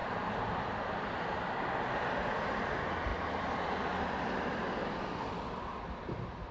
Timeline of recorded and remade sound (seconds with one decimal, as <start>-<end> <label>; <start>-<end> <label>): 0.0-6.5 recorded